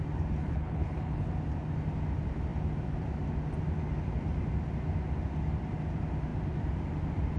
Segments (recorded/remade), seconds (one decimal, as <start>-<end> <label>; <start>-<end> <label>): 0.0-0.4 recorded; 0.4-1.3 remade; 1.3-7.4 recorded